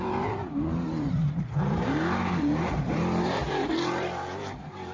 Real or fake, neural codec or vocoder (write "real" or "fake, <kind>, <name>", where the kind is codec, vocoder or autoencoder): fake, vocoder, BigVGAN v2